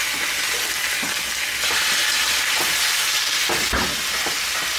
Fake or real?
real